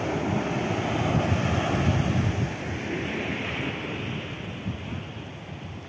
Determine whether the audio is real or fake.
real